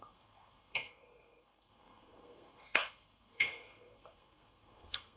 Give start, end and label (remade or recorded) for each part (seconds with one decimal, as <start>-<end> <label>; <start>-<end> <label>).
0.0-5.2 remade